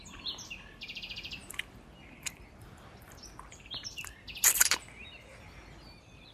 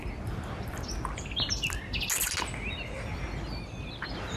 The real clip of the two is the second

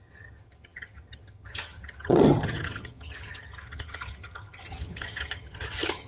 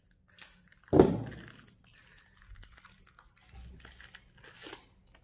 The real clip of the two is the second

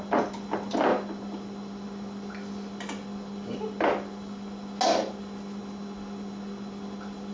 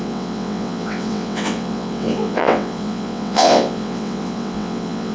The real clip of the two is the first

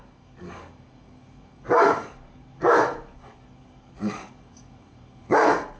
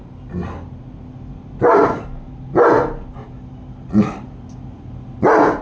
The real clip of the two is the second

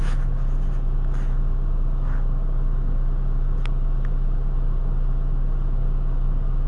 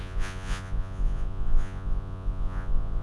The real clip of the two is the first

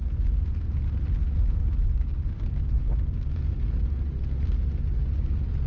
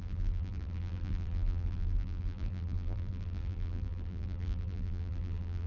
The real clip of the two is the first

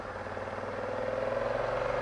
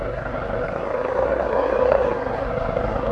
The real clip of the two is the first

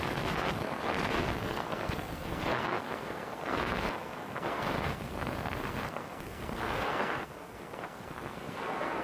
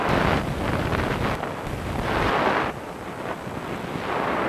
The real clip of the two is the second